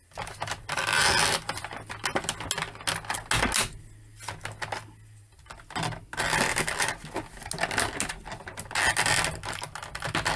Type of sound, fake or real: real